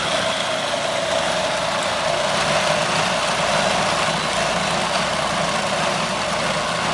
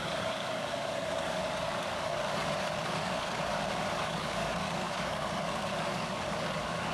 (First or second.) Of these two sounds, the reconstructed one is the second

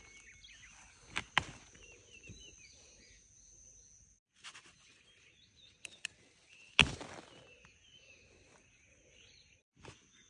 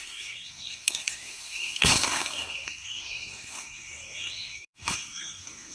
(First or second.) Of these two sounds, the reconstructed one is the second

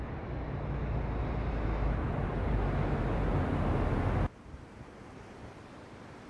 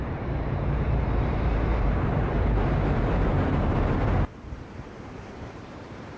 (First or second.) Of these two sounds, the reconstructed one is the second